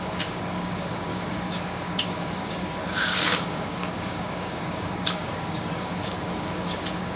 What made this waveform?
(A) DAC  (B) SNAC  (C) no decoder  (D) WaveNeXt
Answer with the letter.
A